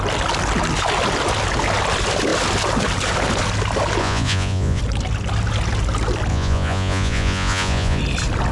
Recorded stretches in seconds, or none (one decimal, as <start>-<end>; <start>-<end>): 0.0-4.0; 4.8-6.3; 8.0-8.5